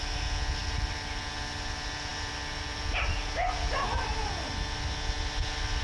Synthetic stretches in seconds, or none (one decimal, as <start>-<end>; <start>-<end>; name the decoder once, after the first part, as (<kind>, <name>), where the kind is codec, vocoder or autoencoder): 0.6-1.3 (vocoder, BigVGAN v2); 2.1-4.1